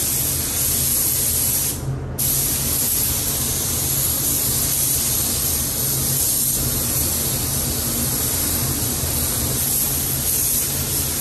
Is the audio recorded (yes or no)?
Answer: yes